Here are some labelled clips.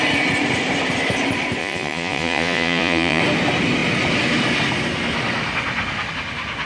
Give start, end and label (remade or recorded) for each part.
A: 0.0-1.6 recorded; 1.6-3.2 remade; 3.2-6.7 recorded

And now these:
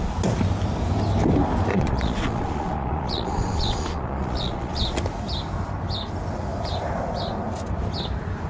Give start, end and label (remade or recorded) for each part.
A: 0.0-1.7 recorded; 1.7-5.0 remade; 5.0-8.5 recorded